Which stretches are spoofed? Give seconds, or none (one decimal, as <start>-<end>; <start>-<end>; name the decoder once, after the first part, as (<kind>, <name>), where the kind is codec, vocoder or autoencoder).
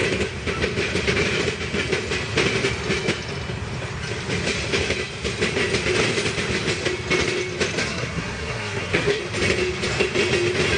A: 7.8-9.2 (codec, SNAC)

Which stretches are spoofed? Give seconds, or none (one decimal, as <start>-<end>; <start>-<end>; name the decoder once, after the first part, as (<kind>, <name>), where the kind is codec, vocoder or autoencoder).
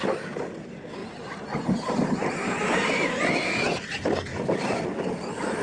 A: none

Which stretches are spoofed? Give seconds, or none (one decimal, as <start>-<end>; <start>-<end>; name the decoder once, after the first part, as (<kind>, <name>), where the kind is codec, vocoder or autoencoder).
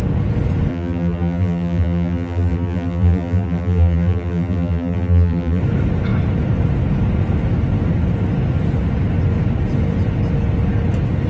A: 0.7-5.6 (vocoder, BigVGAN v2)